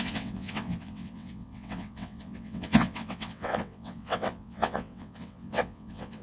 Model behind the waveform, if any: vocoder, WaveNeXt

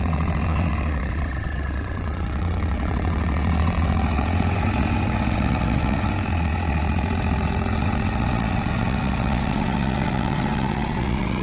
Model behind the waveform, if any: vocoder, WaveNeXt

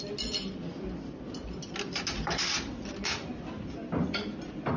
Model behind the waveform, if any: none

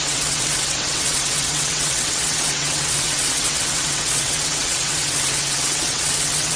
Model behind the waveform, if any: vocoder, WaveNeXt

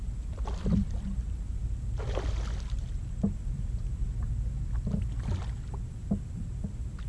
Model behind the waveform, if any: none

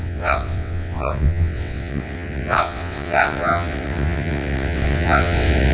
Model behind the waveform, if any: vocoder, WaveNeXt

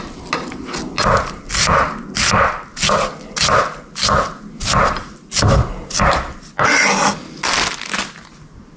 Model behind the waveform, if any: none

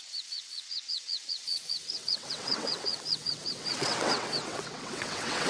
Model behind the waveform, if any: vocoder, WaveNeXt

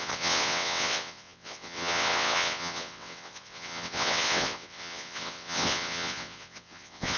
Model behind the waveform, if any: vocoder, WaveNeXt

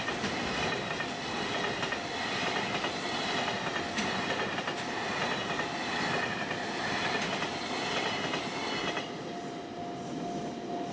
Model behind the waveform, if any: none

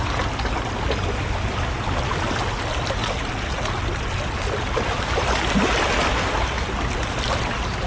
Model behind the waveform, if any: none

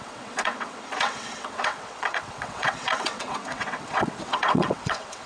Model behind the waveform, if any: vocoder, WaveNeXt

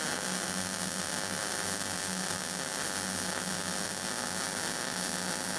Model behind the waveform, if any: none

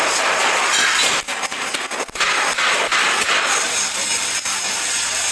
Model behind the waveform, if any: none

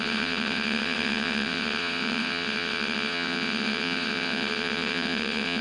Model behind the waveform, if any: vocoder, WaveNeXt